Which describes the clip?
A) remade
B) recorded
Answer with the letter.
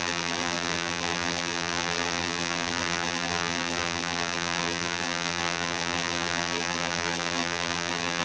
A